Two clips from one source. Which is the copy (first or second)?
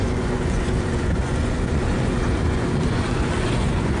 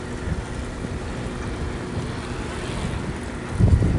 first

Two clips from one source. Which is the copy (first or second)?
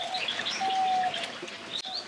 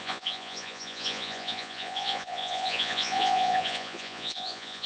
second